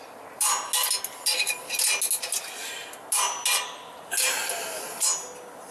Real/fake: real